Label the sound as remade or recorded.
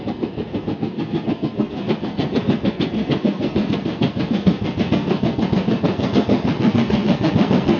remade